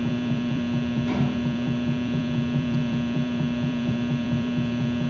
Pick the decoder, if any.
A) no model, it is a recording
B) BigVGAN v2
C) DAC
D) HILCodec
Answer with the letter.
B